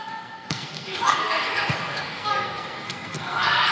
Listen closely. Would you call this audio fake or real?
fake